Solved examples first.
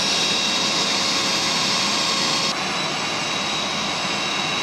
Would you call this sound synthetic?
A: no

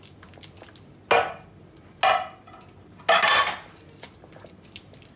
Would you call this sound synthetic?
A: no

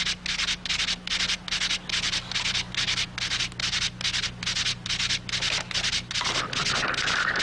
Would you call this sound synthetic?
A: no